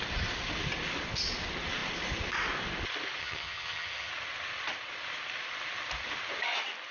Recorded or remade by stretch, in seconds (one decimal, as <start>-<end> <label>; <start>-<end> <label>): 0.0-3.2 recorded; 3.2-4.1 remade; 4.1-6.9 recorded